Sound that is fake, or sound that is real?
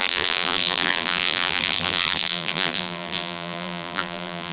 fake